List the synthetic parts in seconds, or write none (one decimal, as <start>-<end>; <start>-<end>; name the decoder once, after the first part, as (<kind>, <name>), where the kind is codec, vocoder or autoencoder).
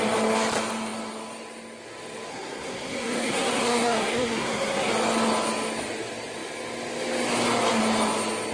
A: 2.3-4.9 (codec, SNAC)